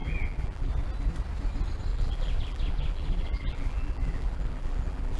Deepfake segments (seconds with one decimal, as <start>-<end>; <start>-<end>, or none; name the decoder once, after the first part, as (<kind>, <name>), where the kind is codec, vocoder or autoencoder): 0.0-0.7 (vocoder, BigVGAN v2); 1.9-5.2